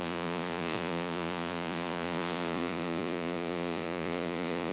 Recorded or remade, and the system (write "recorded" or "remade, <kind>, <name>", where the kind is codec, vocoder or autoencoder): remade, vocoder, Vocos